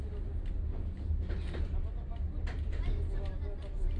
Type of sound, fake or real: real